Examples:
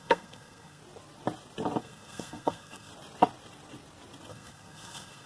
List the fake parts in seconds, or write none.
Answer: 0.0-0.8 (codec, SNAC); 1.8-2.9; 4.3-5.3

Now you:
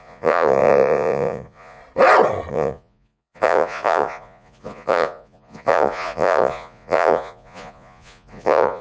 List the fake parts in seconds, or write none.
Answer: 0.0-1.8 (vocoder, Vocos); 2.5-8.8

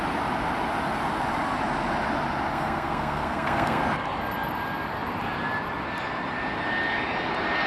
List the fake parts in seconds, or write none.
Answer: 2.5-3.8 (codec, SNAC)

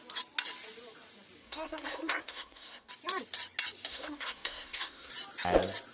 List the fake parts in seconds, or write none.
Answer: 1.4-2.9 (codec, SNAC); 3.9-5.1

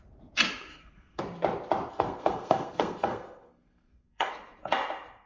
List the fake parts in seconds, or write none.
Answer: 0.7-1.2 (codec, SNAC); 1.9-4.3

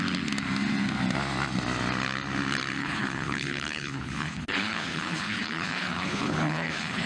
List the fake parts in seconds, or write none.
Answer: 2.8-7.1 (codec, HILCodec)